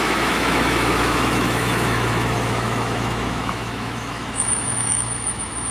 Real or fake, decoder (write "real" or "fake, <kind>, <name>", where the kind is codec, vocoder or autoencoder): fake, autoencoder, DAC-VAE